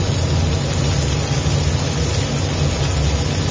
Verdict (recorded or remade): recorded